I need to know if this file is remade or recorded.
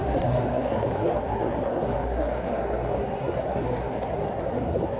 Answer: remade